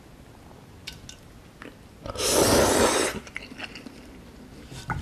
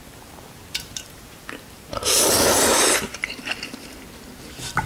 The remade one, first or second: second